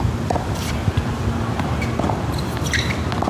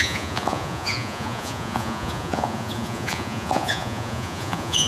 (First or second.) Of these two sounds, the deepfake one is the second